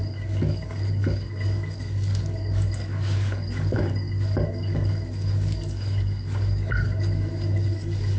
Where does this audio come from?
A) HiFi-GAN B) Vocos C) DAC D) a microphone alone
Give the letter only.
C